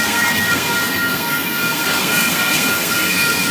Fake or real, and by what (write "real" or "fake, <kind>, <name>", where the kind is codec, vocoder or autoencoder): fake, codec, SNAC